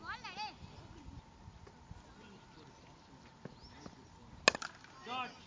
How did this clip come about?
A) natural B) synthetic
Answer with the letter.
A